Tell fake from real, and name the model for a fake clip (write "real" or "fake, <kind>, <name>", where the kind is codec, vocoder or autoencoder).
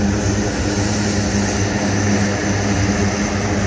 real